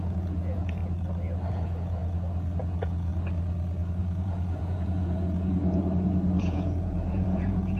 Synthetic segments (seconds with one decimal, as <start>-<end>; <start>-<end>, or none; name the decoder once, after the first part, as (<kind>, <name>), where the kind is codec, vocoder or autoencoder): 0.0-0.8 (vocoder, Vocos); 1.5-2.0; 2.6-3.1; 4.0-5.5; 6.4-7.8